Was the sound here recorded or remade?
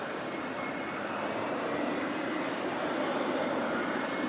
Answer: recorded